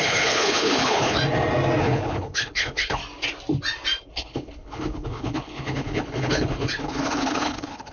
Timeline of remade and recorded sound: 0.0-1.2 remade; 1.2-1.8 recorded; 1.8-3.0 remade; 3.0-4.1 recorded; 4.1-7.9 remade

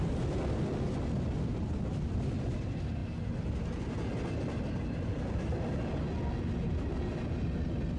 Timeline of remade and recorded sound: 0.0-8.0 recorded

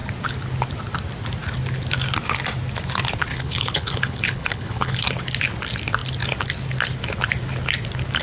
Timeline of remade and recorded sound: 0.0-3.3 recorded; 3.3-5.0 remade; 5.0-8.2 recorded

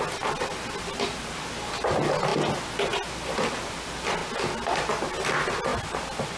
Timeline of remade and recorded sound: 0.0-6.4 recorded

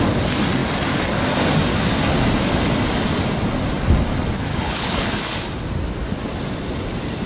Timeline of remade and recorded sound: 0.0-4.5 recorded; 4.5-5.2 remade; 5.2-7.3 recorded

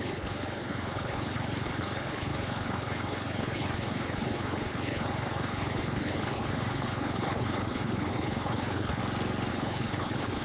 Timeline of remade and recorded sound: 0.0-9.0 remade; 9.0-9.5 recorded; 9.5-10.4 remade

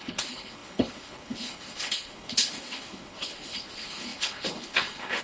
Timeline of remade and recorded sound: 0.0-5.2 remade

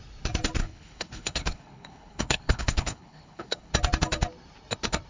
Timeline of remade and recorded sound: 0.0-0.6 recorded; 0.6-3.7 remade; 3.7-5.1 recorded